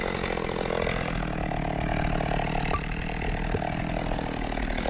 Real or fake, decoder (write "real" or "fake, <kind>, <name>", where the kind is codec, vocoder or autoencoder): real